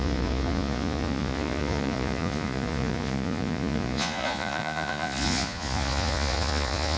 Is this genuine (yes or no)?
no